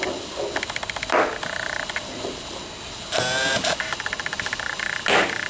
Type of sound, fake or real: real